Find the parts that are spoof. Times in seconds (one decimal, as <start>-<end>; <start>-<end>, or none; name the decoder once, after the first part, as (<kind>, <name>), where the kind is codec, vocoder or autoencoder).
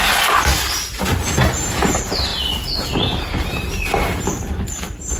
0.0-0.5 (vocoder, BigVGAN v2); 1.7-2.3; 4.2-5.2